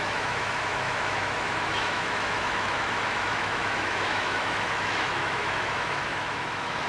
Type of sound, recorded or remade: remade